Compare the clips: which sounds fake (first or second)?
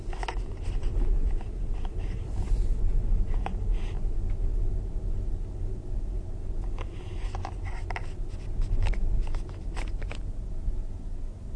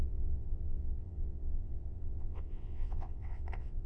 second